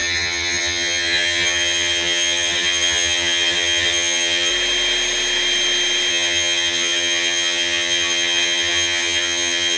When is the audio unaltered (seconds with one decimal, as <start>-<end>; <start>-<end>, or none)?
4.5-6.1